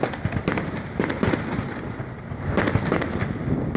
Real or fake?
real